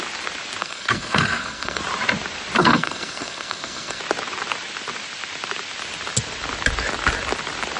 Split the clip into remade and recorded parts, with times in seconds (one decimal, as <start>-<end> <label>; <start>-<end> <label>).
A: 0.0-0.6 recorded; 0.6-1.8 remade; 1.8-2.6 recorded; 2.6-4.0 remade; 4.0-7.8 recorded